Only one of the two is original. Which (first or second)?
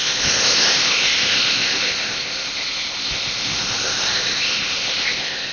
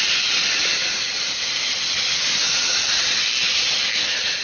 second